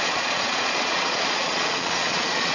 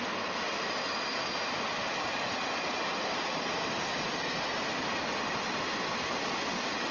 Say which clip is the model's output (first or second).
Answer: first